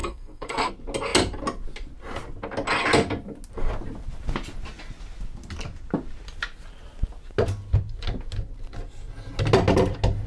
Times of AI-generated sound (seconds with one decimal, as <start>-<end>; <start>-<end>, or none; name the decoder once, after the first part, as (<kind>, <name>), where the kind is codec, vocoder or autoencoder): 0.0-0.7 (codec, SNAC)